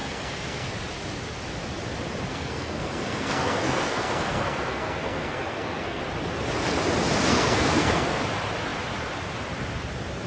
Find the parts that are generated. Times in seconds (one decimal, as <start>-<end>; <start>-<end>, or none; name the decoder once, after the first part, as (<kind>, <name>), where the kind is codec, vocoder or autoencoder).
0.0-0.7 (codec, SNAC); 2.3-6.0; 7.3-8.2